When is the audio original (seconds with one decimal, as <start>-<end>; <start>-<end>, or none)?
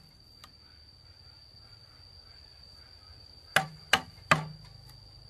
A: 0.0-5.3